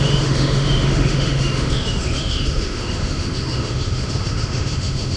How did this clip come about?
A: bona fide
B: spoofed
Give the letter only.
B